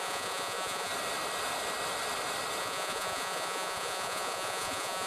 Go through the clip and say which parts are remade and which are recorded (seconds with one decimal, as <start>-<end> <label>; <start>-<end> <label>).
0.0-0.9 remade; 0.9-2.6 recorded; 2.6-5.1 remade